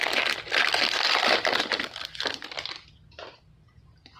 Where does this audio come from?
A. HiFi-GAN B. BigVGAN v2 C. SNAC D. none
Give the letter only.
D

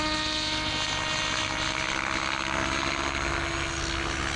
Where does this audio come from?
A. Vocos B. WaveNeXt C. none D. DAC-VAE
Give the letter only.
C